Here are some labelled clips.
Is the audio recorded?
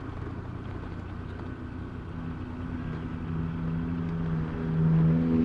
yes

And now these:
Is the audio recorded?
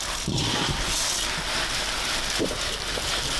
yes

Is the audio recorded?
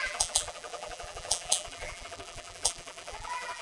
no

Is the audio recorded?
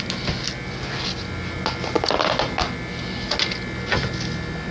yes